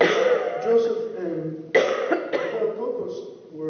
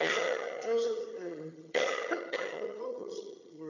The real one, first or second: first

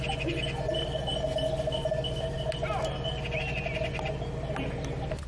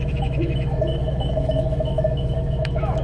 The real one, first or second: first